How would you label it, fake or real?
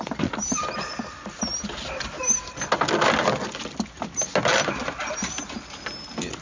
real